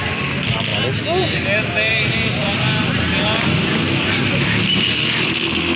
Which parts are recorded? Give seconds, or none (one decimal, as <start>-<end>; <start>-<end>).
0.0-5.8